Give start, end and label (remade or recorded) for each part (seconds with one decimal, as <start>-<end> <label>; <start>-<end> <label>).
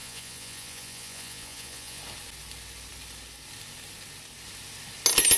0.0-2.0 remade; 2.0-5.4 recorded